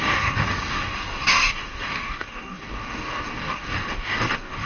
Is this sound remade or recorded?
remade